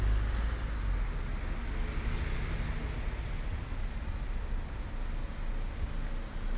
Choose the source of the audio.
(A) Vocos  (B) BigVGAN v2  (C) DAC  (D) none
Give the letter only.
D